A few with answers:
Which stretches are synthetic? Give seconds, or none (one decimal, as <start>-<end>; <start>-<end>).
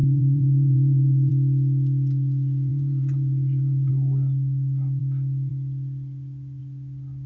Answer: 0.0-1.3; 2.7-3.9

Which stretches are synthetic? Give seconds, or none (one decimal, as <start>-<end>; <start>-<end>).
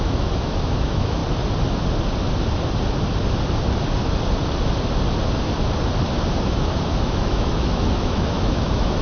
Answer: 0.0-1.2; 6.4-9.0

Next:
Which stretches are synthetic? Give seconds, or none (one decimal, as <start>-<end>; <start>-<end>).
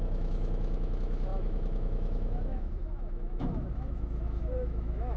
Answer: 0.0-5.2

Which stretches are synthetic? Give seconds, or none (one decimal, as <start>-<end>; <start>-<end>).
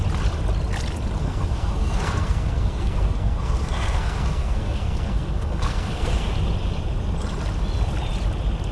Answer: 1.2-6.3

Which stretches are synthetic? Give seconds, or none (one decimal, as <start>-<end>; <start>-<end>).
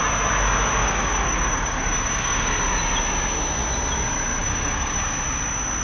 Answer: 0.8-2.5; 4.4-5.0